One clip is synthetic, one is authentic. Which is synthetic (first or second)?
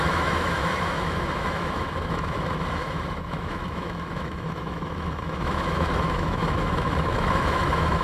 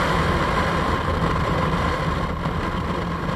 first